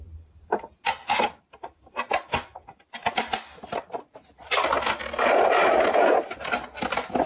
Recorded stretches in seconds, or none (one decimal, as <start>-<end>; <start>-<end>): 0.0-7.3